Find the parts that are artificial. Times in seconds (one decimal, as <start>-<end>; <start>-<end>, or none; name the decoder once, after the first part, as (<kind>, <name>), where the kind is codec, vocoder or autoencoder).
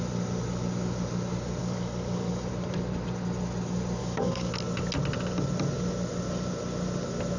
1.6-2.5 (codec, DAC); 4.0-4.5